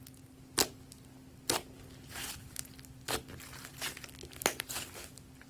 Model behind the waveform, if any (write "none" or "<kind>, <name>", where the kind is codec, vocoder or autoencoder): none